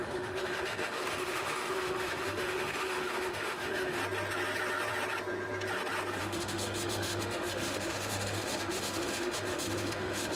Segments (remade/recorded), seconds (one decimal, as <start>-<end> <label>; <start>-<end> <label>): 0.0-4.0 remade; 4.0-6.2 recorded; 6.2-10.4 remade